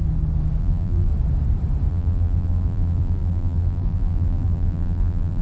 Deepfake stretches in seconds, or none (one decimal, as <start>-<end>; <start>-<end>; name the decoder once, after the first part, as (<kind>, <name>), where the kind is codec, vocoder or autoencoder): 0.6-1.1 (vocoder, BigVGAN v2); 1.9-5.4